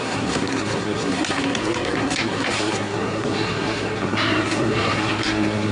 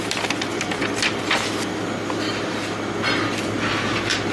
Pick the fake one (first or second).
first